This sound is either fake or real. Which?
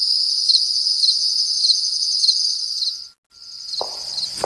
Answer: real